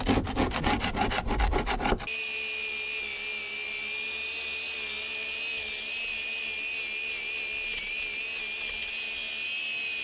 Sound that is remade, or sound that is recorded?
recorded